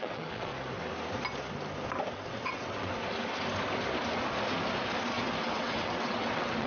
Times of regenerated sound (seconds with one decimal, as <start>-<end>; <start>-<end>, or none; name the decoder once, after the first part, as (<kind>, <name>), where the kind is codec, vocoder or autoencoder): 0.0-0.5 (vocoder, WaveNeXt); 2.3-2.9; 5.4-6.7